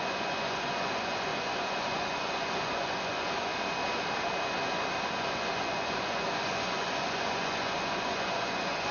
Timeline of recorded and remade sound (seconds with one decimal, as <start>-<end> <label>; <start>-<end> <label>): 0.0-3.5 remade; 3.5-5.2 recorded; 5.2-8.9 remade